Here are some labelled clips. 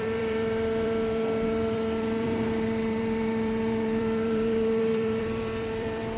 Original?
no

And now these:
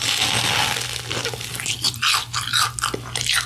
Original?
yes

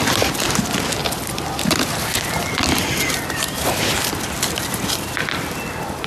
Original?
yes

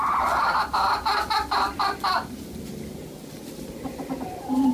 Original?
no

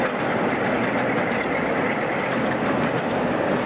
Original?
yes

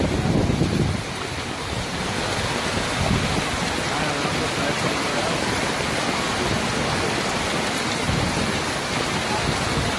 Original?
yes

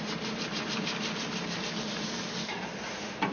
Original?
no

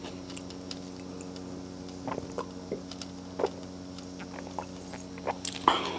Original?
yes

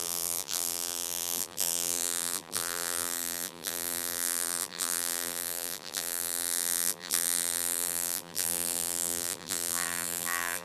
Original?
no